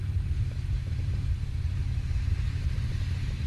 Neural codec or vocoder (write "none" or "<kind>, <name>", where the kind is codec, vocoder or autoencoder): vocoder, BigVGAN v2